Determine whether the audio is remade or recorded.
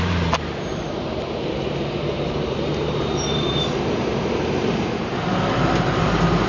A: remade